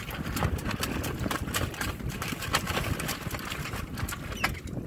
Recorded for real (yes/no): yes